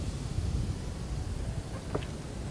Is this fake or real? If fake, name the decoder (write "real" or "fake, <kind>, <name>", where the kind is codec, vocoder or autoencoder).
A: real